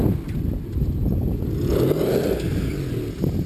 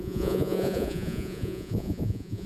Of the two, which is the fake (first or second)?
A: second